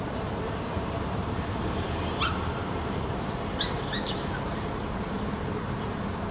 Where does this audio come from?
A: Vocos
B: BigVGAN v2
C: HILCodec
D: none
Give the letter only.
B